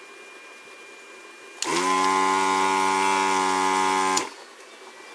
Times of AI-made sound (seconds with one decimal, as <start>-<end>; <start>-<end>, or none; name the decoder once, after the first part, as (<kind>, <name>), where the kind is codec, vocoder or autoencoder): none